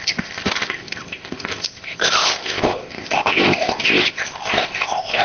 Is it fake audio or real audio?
fake